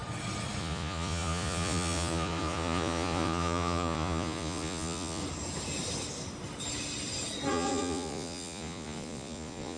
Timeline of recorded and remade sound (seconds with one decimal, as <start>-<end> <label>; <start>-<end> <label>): 0.0-0.6 recorded; 0.6-5.2 remade; 5.2-7.5 recorded; 7.5-9.8 remade